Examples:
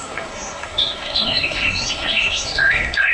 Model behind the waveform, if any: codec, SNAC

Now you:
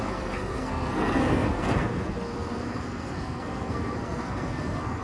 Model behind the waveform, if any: codec, SNAC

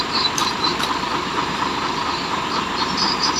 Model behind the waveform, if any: vocoder, BigVGAN v2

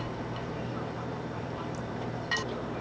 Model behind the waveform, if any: vocoder, BigVGAN v2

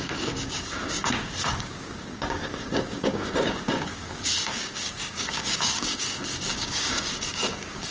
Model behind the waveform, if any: codec, DAC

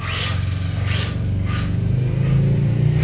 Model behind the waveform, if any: none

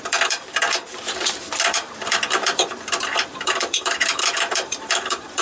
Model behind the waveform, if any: vocoder, BigVGAN v2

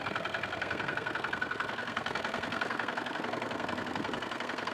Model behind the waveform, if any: codec, SNAC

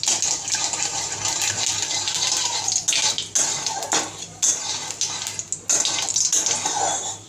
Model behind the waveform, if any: none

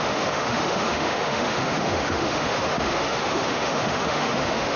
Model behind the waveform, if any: autoencoder, DAC-VAE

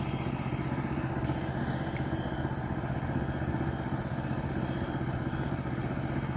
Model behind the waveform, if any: none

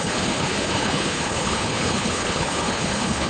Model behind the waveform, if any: codec, HILCodec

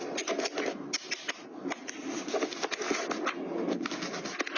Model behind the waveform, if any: none